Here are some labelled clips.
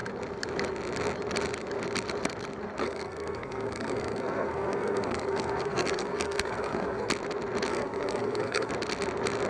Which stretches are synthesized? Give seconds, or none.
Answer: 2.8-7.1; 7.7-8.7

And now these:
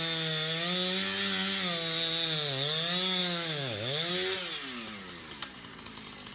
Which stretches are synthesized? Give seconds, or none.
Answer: 3.2-4.1

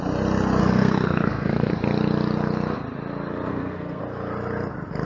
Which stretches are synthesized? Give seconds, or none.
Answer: 0.6-1.7; 3.5-4.0

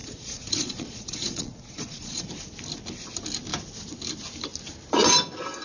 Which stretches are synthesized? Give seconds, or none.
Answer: 0.0-2.3